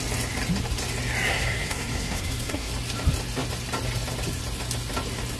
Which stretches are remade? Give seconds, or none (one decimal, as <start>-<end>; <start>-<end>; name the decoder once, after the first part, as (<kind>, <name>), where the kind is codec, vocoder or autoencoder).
1.3-2.7 (codec, SNAC)